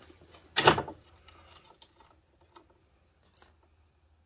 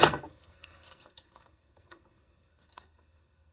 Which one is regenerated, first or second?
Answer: second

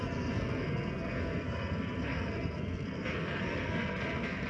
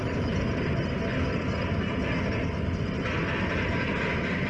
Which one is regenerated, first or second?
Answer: first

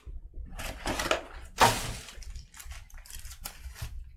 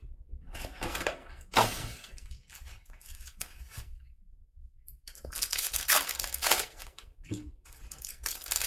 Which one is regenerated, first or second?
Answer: second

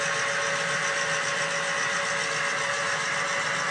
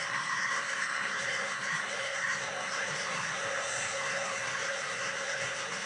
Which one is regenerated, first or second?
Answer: second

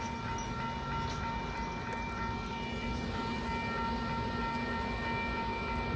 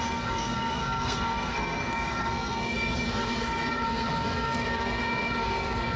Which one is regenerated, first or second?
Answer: second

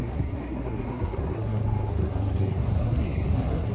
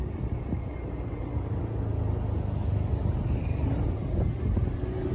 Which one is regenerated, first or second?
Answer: first